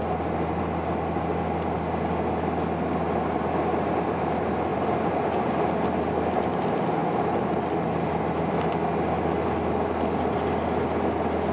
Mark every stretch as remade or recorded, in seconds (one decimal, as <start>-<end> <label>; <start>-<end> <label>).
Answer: 0.0-11.5 recorded